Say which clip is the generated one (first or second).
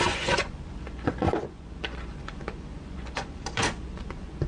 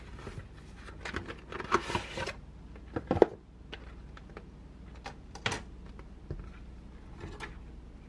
first